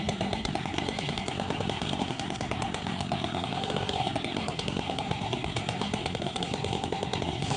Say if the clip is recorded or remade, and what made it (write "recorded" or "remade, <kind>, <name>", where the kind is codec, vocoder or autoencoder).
remade, codec, SNAC